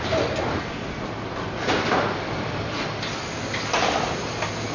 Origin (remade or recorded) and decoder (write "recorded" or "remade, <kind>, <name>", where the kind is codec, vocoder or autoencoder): recorded